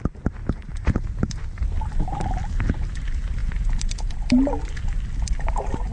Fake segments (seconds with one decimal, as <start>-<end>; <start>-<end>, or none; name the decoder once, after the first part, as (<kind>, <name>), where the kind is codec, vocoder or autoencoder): none